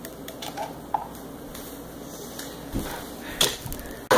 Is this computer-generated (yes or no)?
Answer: no